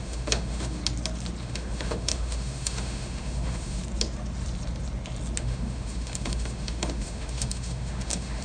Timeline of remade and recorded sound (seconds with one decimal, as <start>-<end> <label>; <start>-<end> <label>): 0.0-0.8 remade; 0.8-1.4 recorded; 1.4-3.8 remade; 3.8-5.4 recorded; 5.4-8.4 remade